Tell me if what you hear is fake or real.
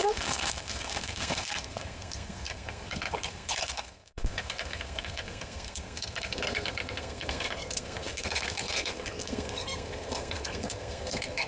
fake